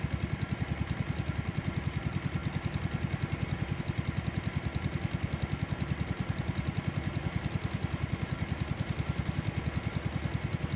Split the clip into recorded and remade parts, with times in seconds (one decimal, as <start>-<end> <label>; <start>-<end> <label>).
0.0-10.8 recorded